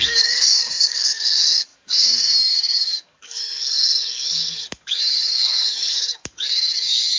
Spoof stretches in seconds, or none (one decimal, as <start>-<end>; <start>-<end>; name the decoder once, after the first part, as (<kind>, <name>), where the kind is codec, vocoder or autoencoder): 0.0-7.2 (codec, DAC)